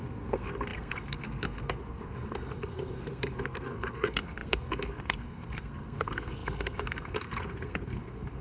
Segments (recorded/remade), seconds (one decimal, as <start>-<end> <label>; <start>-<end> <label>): 0.0-8.4 remade